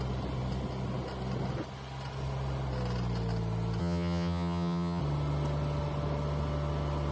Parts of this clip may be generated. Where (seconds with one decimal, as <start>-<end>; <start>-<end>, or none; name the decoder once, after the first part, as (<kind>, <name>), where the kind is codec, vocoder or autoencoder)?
3.8-5.0 (vocoder, HiFi-GAN)